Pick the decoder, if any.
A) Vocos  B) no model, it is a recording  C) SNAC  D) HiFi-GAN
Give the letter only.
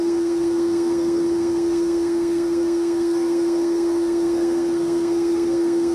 C